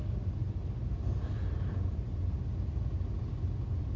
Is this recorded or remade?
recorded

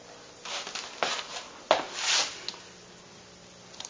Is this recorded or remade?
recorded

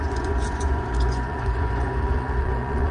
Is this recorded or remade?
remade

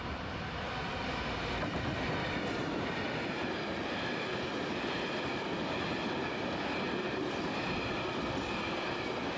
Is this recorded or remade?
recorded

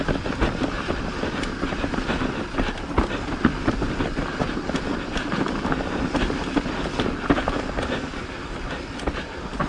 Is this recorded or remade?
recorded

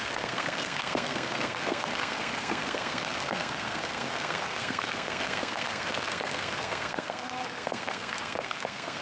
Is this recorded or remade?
remade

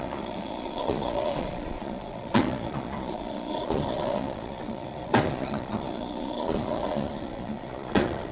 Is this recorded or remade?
remade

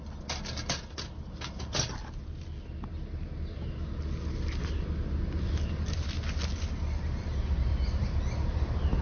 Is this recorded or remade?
recorded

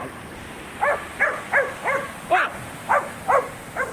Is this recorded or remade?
recorded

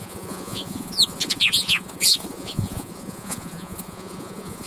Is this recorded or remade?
remade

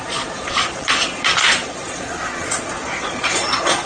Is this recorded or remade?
remade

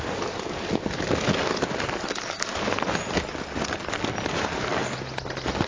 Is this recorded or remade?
recorded